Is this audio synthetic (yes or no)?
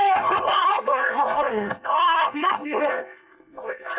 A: yes